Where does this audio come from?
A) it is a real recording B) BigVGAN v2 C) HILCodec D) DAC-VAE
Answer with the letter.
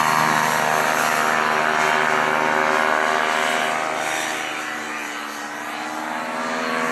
A